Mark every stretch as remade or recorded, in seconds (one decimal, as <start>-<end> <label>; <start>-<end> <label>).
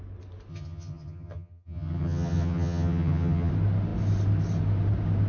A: 0.0-0.5 recorded; 0.5-3.5 remade; 3.5-5.3 recorded